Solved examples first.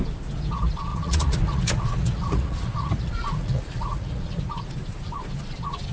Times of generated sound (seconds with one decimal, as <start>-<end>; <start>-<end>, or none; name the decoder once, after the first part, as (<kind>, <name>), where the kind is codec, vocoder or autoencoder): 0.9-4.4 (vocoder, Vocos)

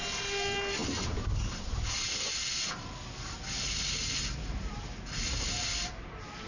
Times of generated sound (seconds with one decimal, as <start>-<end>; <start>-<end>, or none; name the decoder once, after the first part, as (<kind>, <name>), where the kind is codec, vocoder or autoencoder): 0.8-4.7 (vocoder, BigVGAN v2)

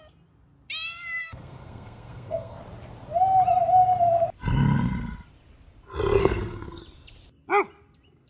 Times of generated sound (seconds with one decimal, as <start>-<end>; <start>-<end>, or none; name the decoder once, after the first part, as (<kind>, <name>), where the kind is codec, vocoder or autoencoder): 1.2-2.6 (codec, SNAC); 6.2-6.8

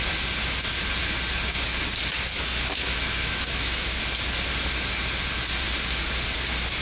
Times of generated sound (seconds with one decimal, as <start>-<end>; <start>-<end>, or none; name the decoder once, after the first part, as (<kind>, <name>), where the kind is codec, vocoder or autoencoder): 2.3-4.0 (autoencoder, DAC-VAE)

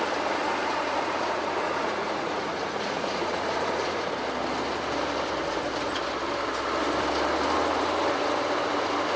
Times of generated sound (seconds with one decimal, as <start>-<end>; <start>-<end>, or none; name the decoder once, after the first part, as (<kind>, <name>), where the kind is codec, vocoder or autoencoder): 0.6-4.1 (vocoder, Vocos); 5.4-6.0

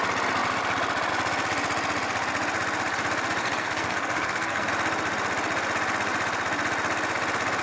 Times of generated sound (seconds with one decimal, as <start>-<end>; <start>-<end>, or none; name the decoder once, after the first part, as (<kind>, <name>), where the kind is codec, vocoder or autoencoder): 3.4-4.7 (codec, SNAC)

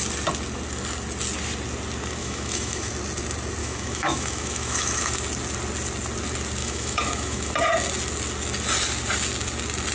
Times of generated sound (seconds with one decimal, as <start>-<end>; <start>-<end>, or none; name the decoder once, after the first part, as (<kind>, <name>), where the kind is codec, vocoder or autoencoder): 2.2-2.9 (autoencoder, DAC-VAE); 3.6-5.1; 6.6-7.5

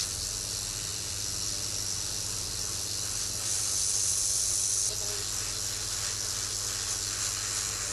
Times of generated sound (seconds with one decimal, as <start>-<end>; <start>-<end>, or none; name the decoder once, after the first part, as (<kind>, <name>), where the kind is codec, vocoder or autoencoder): none